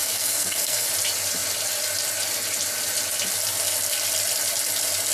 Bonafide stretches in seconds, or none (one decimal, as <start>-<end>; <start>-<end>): 0.9-5.1

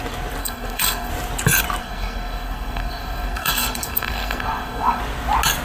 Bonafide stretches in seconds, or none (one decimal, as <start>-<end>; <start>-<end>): 0.0-0.4; 1.1-1.8; 5.0-5.6

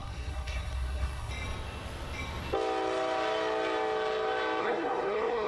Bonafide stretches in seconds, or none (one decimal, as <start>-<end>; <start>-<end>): 1.3-4.6

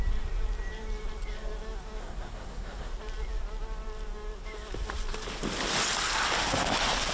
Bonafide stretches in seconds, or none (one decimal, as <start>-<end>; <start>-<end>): 0.0-2.0; 2.9-7.1

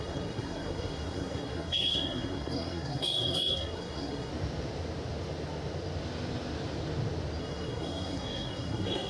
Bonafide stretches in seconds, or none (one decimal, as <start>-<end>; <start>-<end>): 4.3-7.4

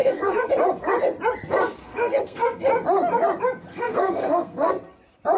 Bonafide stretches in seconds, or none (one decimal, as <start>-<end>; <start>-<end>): 0.5-1.8; 2.6-3.7; 4.7-5.4

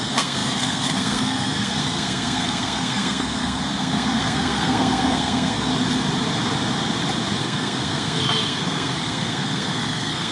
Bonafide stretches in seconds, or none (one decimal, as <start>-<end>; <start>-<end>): 5.7-7.4